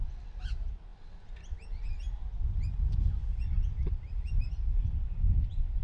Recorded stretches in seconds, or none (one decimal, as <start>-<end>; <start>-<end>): 0.0-5.8